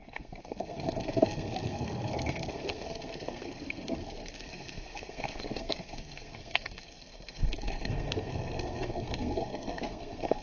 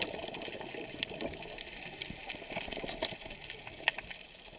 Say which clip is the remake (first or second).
first